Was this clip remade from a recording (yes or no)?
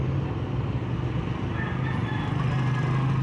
no